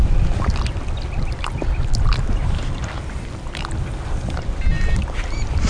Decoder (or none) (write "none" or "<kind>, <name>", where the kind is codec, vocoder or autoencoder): none